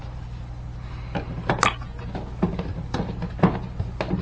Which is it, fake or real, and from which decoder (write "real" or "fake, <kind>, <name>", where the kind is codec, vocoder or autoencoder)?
real